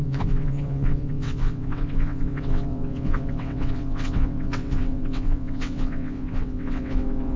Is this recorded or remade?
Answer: remade